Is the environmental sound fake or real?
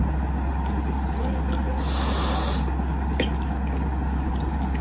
real